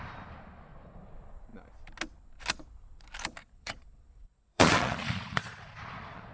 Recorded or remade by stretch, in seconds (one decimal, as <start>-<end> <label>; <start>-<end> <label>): 0.0-3.4 recorded; 3.4-6.3 remade